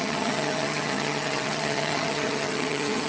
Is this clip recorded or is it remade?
remade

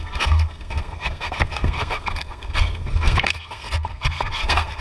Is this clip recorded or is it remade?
remade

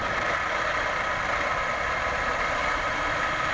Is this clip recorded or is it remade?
recorded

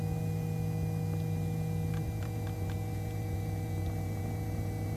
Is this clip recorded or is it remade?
recorded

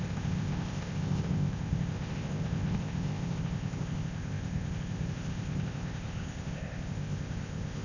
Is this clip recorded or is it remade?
remade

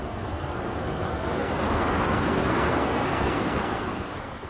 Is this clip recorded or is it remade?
remade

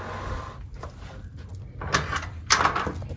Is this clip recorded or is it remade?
recorded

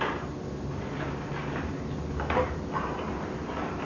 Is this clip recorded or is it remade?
recorded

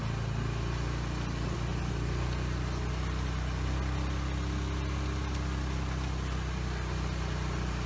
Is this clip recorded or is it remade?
recorded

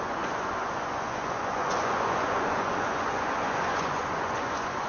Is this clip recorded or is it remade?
remade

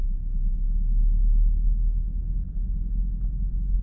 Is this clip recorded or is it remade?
recorded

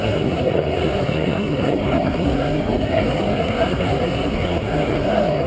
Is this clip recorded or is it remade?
remade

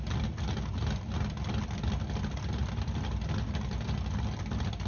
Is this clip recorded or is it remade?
recorded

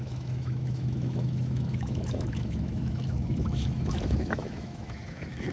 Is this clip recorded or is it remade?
remade